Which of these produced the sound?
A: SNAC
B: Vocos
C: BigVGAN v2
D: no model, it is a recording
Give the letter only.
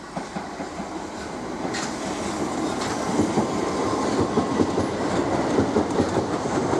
D